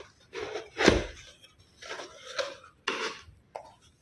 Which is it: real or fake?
real